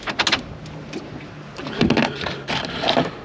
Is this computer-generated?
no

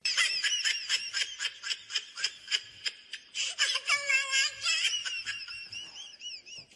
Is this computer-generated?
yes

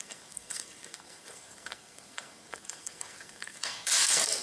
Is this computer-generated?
yes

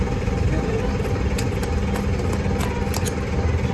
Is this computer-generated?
no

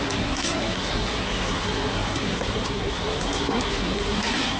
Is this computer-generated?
yes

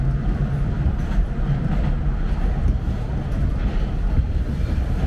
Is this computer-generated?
no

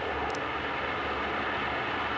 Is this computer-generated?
no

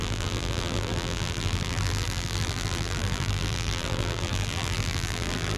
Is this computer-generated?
yes